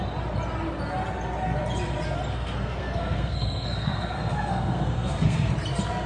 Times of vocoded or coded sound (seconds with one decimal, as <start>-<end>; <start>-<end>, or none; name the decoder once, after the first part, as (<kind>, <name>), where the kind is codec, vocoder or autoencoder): 2.3-5.5 (codec, SNAC)